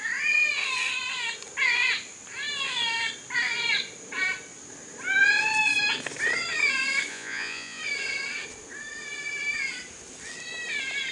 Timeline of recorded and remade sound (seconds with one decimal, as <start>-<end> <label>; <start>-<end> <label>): 0.0-7.1 recorded; 7.1-7.8 remade; 7.8-11.1 recorded